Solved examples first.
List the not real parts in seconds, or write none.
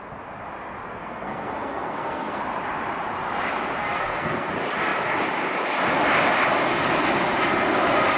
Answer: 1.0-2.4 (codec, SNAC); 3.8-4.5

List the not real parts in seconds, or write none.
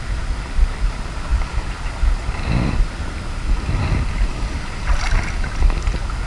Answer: none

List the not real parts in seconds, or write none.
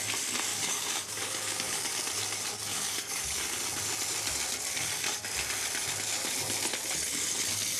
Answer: 0.5-1.9 (codec, DAC); 2.7-3.6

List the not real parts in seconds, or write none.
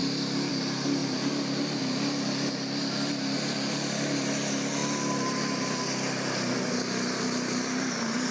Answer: 0.0-0.5 (vocoder, BigVGAN v2); 4.8-6.6